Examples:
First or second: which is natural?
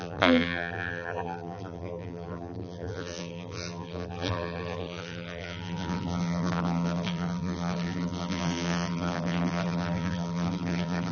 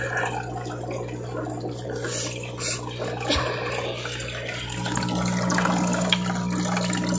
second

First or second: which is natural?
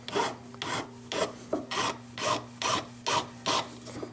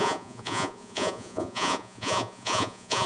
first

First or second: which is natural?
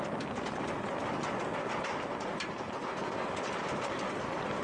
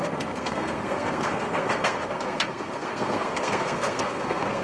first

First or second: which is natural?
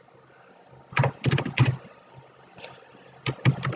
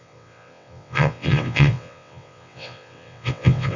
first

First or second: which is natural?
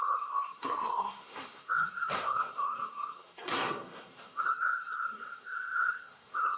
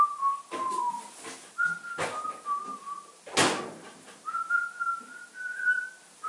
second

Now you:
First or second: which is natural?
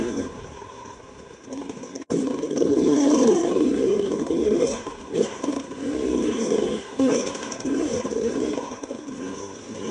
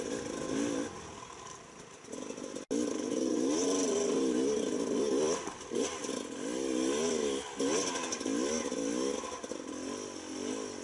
second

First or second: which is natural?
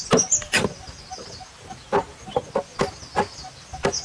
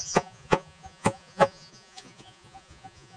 first